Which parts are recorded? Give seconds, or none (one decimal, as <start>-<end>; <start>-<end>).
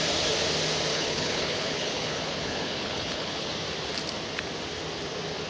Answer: 0.0-0.9; 3.5-5.5